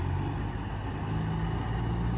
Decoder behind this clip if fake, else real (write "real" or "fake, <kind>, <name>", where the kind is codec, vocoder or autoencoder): real